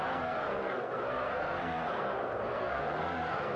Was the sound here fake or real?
fake